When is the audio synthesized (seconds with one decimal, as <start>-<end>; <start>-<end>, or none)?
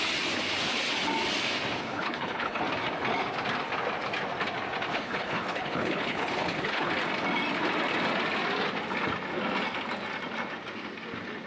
1.8-2.6; 4.9-6.9